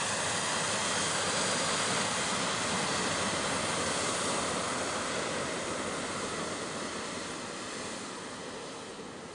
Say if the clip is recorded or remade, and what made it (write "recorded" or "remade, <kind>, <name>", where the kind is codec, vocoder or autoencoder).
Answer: recorded